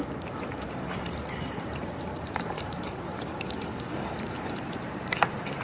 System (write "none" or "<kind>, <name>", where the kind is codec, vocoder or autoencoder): vocoder, BigVGAN v2